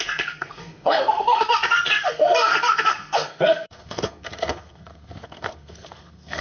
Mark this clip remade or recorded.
remade